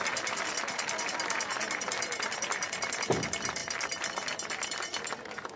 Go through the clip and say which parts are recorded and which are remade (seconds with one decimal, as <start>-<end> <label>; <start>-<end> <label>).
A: 0.0-5.6 recorded